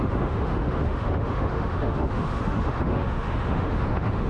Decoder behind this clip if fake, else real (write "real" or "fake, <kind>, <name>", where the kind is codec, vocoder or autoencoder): fake, autoencoder, DAC-VAE